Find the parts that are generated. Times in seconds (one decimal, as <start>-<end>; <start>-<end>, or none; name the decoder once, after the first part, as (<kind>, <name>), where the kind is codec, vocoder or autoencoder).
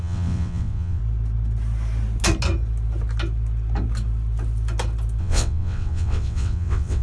0.0-1.0 (vocoder, WaveNeXt); 5.2-7.0